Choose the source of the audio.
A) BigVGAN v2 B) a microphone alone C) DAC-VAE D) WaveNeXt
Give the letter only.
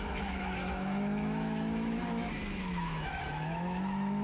C